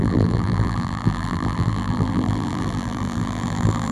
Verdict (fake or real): fake